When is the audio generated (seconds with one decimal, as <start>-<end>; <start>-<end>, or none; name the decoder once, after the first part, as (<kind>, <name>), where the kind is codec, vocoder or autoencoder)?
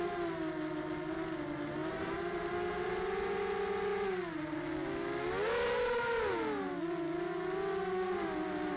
1.8-2.5 (vocoder, BigVGAN v2)